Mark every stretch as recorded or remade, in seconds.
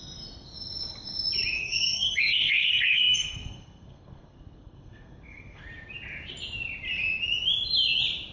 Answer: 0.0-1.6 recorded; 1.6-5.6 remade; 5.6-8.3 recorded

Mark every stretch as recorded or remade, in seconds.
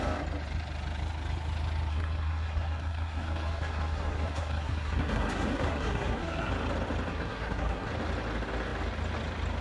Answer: 0.0-1.9 recorded; 1.9-6.5 remade; 6.5-7.1 recorded; 7.1-7.9 remade; 7.9-9.6 recorded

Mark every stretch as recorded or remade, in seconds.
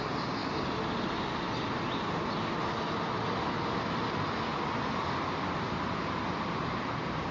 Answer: 0.0-7.3 recorded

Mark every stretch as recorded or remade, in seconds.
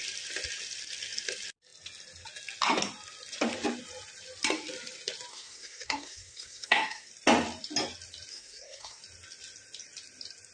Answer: 0.0-5.3 recorded; 5.3-7.1 remade; 7.1-8.3 recorded; 8.3-9.0 remade; 9.0-10.5 recorded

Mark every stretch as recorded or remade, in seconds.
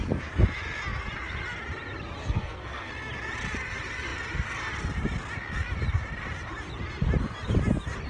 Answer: 0.0-2.2 recorded; 2.2-2.9 remade; 2.9-8.1 recorded